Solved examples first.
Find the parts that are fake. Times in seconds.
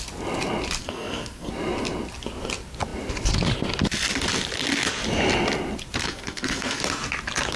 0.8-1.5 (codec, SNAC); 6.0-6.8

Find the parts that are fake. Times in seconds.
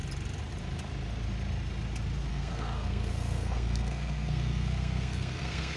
2.3-5.8 (codec, SNAC)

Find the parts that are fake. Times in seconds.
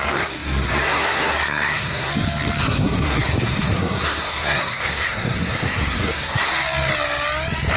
0.0-2.1 (codec, SNAC); 2.6-6.5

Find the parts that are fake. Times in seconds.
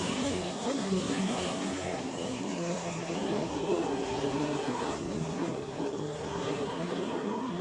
0.0-7.6 (codec, SNAC)